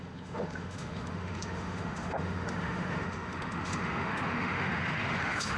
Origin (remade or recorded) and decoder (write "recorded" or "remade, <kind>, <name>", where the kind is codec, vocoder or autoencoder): remade, autoencoder, DAC-VAE